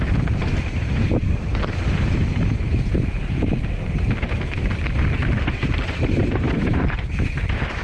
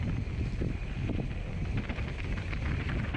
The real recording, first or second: second